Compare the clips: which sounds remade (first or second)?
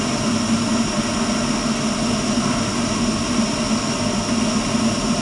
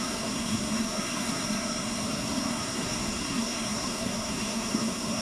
second